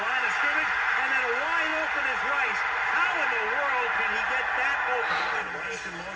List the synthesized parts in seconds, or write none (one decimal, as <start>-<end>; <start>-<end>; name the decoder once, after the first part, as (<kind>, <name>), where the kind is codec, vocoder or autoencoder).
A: none